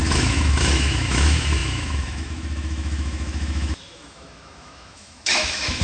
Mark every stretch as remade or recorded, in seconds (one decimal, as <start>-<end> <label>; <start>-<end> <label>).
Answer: 0.0-5.8 remade